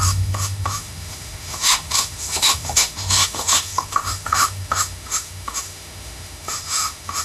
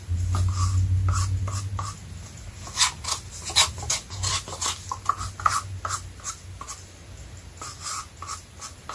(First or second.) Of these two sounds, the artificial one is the first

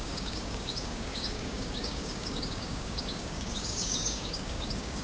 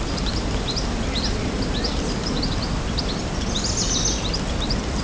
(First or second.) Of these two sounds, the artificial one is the first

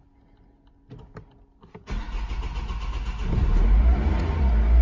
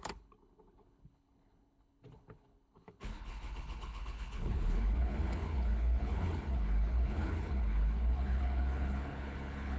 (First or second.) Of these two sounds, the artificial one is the second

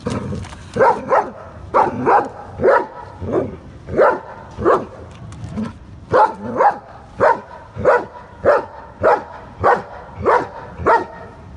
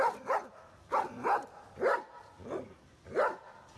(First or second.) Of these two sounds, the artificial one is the first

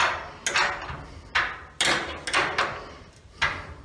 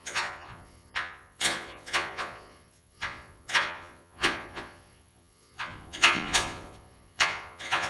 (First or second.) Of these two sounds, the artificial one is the second